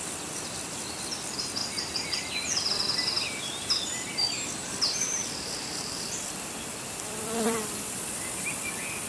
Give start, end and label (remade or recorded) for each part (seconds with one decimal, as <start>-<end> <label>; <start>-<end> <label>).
0.0-1.6 remade; 1.6-2.7 recorded; 2.7-9.1 remade